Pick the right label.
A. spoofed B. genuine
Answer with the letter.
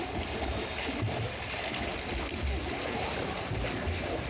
B